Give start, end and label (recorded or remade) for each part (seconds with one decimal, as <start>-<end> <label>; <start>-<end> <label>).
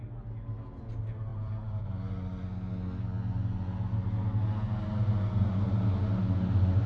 0.0-1.3 recorded; 1.3-1.9 remade; 1.9-6.9 recorded